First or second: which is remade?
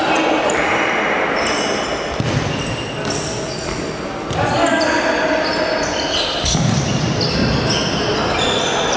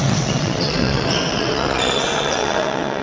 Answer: second